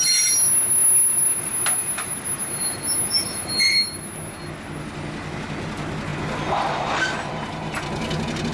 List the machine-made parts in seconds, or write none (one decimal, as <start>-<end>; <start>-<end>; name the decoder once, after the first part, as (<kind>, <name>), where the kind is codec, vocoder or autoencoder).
none